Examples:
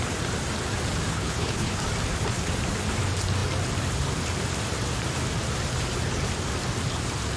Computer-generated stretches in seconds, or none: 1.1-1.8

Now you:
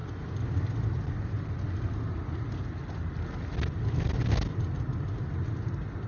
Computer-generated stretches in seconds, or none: none

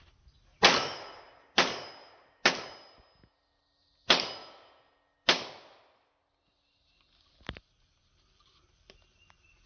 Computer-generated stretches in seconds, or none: none

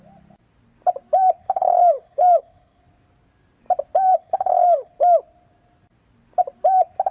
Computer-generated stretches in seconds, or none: 1.4-2.8; 4.1-4.9

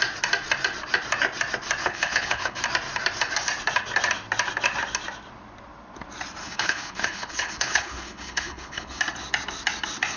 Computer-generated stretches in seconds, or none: 1.8-2.6; 6.4-9.0

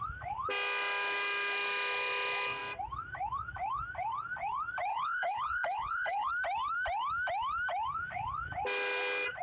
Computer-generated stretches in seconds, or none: 4.9-6.3

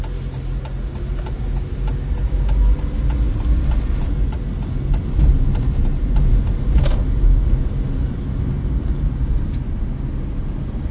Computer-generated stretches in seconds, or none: none

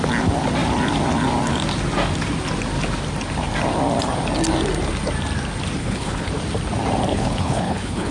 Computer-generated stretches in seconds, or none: 5.8-6.3; 7.1-8.1